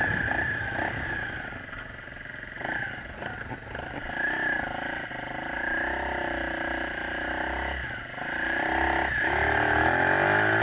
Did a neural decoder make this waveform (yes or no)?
no